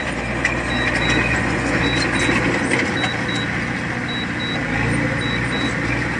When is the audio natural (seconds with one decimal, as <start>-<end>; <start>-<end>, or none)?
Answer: 0.0-1.3; 1.8-6.2

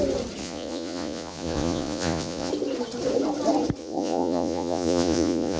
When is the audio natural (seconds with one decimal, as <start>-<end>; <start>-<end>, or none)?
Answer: 0.0-0.4; 2.5-3.8

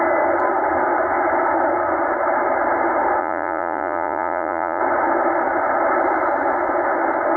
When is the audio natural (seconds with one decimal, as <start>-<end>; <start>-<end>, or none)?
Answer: 0.0-3.2; 4.8-7.4

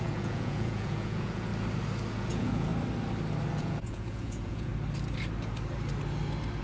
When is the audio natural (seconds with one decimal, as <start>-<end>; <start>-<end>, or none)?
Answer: 1.5-2.1; 2.7-3.6; 4.7-6.6

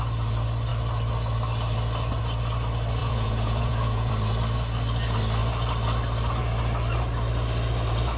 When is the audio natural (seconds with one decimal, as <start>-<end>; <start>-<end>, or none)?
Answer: 0.0-3.0; 4.1-8.2

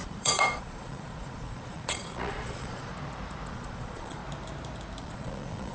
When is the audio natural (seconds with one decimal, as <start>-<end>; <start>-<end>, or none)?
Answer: 2.9-3.5; 4.2-5.0